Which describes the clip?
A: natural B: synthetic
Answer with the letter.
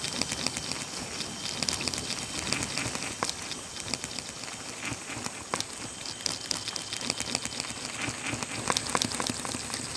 A